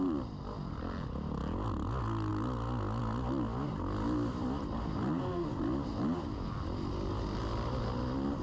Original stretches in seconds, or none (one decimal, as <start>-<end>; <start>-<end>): 0.0-8.4